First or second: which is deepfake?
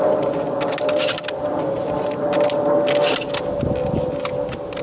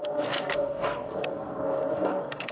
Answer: second